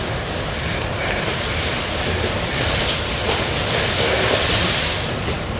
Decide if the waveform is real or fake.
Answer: real